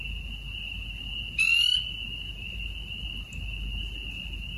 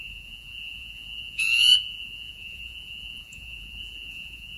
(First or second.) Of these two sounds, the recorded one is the first